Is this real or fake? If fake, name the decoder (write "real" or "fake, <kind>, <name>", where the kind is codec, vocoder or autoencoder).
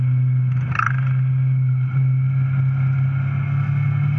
real